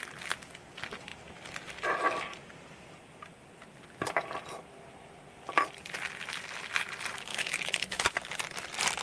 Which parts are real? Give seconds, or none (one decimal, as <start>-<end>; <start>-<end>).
0.0-7.3; 8.0-9.0

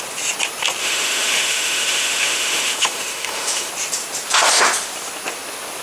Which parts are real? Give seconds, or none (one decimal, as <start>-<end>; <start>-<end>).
0.0-0.8; 3.7-5.8

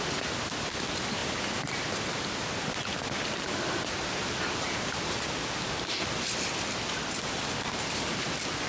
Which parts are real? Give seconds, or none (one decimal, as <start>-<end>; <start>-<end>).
0.0-8.7

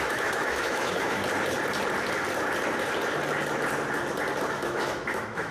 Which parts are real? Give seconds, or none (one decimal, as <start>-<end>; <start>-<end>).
1.2-4.5

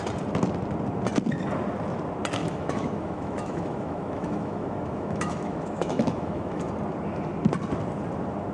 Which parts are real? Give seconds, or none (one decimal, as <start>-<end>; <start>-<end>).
0.0-2.4; 6.7-8.5

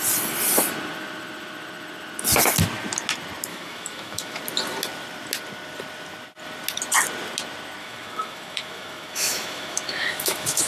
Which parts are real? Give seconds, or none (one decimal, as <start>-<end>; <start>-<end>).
0.0-3.5; 4.4-7.8